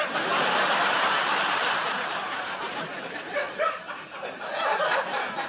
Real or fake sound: fake